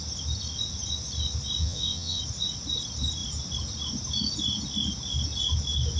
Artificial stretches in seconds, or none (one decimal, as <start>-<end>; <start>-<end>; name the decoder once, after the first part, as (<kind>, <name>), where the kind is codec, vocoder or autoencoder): 1.6-2.2 (vocoder, WaveNeXt)